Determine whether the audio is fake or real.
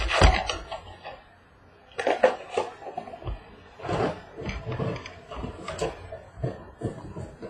real